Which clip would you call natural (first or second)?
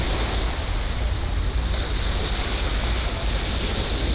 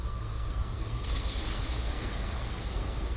first